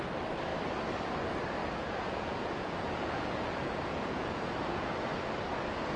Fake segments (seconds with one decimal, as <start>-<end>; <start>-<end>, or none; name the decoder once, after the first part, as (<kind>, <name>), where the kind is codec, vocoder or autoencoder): 1.6-4.9 (vocoder, Vocos)